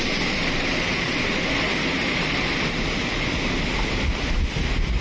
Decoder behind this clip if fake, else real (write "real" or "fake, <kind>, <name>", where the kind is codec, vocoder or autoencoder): real